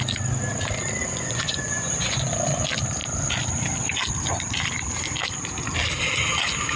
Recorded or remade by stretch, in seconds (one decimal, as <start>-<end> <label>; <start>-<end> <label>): 0.0-1.0 recorded; 1.0-2.3 remade; 2.3-6.8 recorded